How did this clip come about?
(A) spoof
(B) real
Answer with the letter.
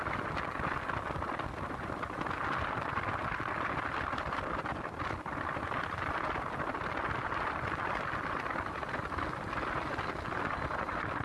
B